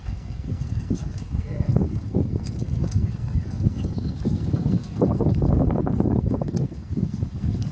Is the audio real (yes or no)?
no